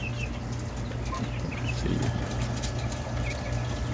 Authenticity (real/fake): real